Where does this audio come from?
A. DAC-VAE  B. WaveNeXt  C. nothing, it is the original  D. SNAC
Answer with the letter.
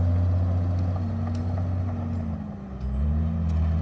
C